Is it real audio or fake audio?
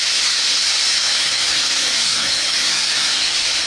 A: fake